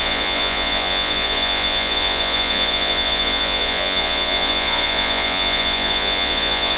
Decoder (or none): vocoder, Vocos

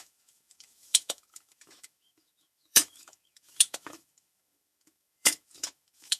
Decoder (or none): autoencoder, DAC-VAE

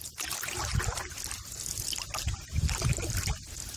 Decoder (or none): none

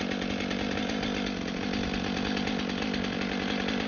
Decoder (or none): none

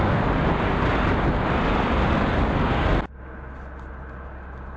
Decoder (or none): none